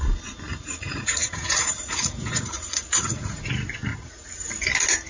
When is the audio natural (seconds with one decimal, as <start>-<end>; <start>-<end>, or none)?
0.0-0.5; 3.4-3.9; 4.4-5.1